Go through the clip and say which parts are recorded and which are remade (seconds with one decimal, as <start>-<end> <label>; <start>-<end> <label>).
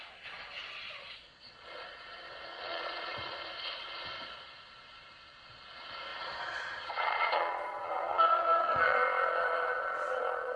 0.0-10.6 remade